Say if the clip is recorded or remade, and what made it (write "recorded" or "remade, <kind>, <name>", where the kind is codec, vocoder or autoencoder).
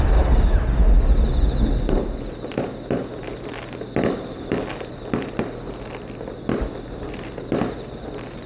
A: recorded